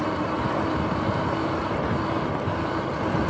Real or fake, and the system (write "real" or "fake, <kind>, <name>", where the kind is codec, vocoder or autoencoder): real